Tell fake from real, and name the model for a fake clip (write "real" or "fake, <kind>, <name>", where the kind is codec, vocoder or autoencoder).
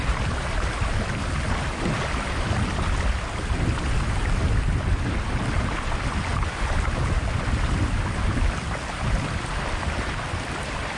real